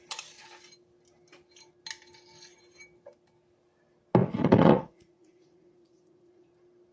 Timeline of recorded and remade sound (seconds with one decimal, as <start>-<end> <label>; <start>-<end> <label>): 0.0-4.2 recorded; 4.2-6.5 remade; 6.5-6.9 recorded